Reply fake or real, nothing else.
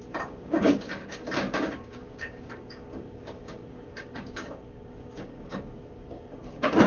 fake